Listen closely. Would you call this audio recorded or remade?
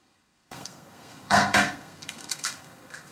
remade